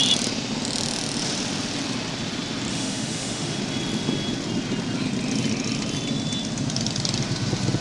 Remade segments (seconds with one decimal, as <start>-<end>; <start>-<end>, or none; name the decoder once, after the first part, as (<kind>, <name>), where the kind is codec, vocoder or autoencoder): 2.7-3.6 (autoencoder, DAC-VAE)